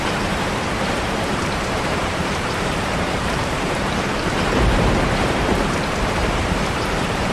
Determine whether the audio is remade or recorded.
remade